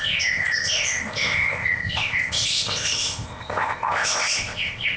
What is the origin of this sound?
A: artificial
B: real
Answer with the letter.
A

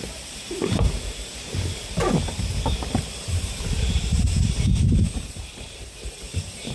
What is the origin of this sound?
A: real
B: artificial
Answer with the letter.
B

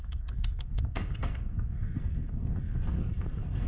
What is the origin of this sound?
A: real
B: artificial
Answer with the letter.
B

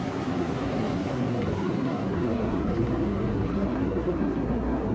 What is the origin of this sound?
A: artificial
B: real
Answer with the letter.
A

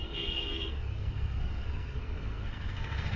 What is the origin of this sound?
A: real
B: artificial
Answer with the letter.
B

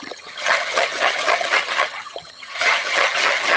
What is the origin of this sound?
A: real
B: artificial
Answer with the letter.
B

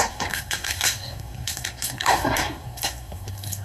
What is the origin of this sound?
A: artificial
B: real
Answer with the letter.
A